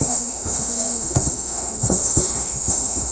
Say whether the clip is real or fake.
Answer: fake